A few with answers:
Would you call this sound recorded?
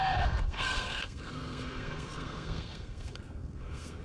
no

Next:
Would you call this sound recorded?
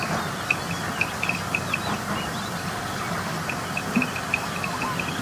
yes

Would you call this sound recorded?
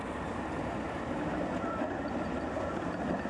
yes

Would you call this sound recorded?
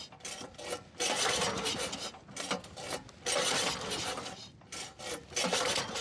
yes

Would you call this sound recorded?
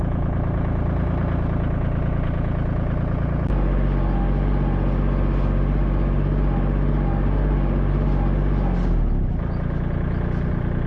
yes